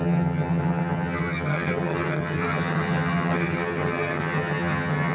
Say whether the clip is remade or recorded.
remade